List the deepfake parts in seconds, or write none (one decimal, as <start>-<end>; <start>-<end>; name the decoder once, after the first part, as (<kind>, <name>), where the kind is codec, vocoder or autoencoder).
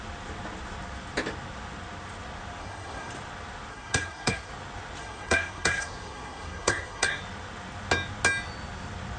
2.6-3.1 (codec, SNAC); 3.7-4.5; 5.0-7.2